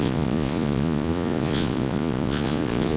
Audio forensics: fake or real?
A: fake